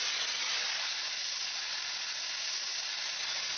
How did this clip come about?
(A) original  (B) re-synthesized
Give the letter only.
A